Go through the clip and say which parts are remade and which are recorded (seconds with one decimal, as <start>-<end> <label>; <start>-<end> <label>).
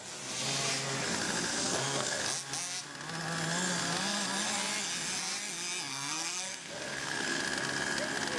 0.0-1.5 recorded; 1.5-2.2 remade; 2.2-5.9 recorded; 5.9-7.4 remade; 7.4-8.4 recorded